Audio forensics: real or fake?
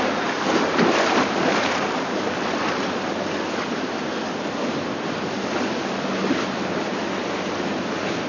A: real